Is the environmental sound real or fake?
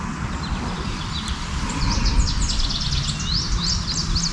real